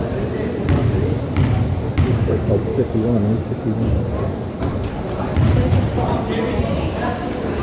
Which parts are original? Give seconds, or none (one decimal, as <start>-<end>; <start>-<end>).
0.0-2.0; 2.7-6.7